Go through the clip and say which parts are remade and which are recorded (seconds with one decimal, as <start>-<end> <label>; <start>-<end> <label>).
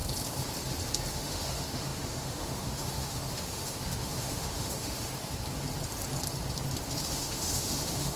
0.0-1.1 recorded; 1.1-5.1 remade; 5.1-7.0 recorded; 7.0-8.2 remade